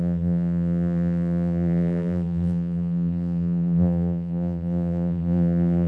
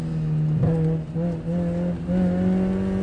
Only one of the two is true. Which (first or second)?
second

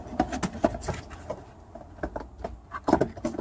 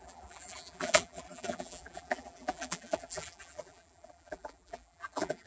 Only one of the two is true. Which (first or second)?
first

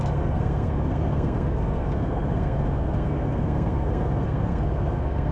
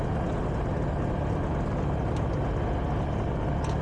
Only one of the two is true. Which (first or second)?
second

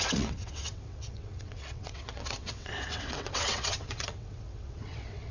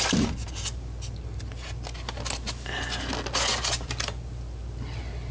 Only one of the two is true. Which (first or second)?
second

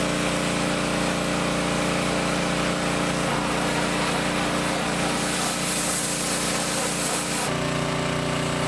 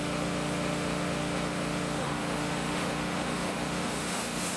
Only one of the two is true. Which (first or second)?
first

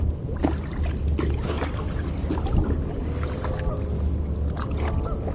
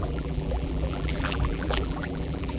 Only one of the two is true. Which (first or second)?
first